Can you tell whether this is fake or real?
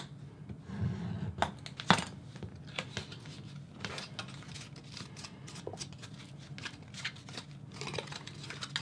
real